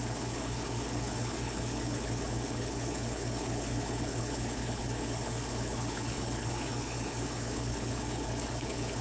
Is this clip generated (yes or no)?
yes